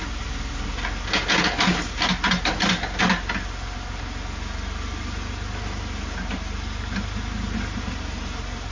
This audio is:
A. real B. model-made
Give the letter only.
A